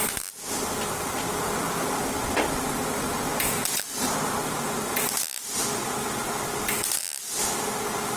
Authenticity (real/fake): real